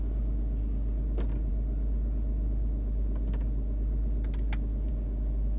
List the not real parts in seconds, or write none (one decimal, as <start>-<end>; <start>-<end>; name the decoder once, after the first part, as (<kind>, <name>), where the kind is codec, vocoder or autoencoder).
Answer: none